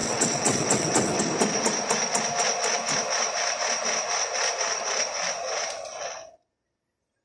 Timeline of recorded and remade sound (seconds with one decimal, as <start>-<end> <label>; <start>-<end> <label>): 0.0-1.2 remade; 1.2-7.2 recorded